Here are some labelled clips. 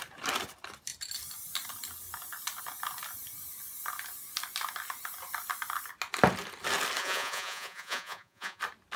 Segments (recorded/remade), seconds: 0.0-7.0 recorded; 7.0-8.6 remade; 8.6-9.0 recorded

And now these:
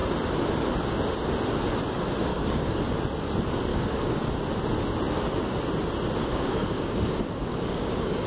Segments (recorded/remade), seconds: 0.0-2.3 recorded; 2.3-2.8 remade; 2.8-3.7 recorded; 3.7-4.3 remade; 4.3-6.2 recorded; 6.2-8.3 remade

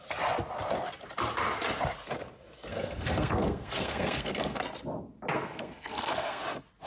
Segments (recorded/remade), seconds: 0.0-2.7 recorded; 2.7-4.6 remade; 4.6-5.3 recorded; 5.3-6.4 remade; 6.4-6.9 recorded

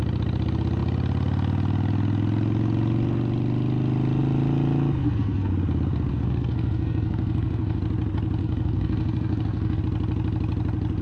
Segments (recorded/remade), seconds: 0.0-5.0 recorded; 5.0-5.5 remade; 5.5-6.1 recorded; 6.1-7.8 remade; 7.8-8.4 recorded; 8.4-9.8 remade; 9.8-11.0 recorded

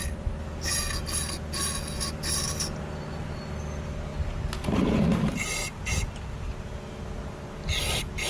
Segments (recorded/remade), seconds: 0.0-8.3 recorded